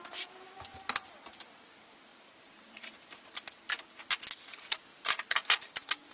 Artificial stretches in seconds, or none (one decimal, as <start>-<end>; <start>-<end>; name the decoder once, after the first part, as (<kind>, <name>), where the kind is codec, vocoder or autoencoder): 2.1-3.2 (vocoder, BigVGAN v2); 4.9-6.1